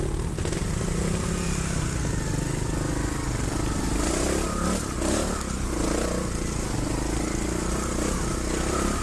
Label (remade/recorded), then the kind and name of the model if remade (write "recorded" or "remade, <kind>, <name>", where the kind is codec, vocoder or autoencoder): recorded